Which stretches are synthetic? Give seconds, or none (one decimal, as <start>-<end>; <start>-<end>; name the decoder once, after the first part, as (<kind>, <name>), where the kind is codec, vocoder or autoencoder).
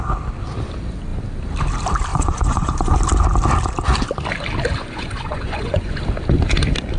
2.1-3.0 (vocoder, Vocos); 4.8-6.0